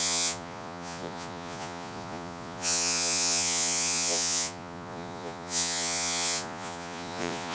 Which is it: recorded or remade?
remade